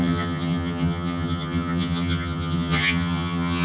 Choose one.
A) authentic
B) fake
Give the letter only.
B